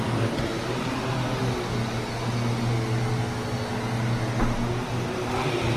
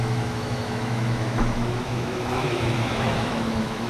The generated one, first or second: second